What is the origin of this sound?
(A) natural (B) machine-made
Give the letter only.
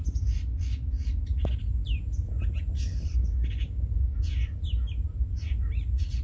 A